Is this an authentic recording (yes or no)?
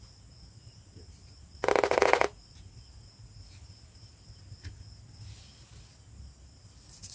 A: yes